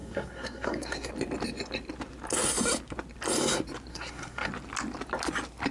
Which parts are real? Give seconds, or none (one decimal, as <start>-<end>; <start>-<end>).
1.1-3.9; 4.5-5.7